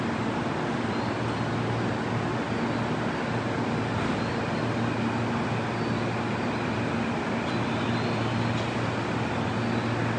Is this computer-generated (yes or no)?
no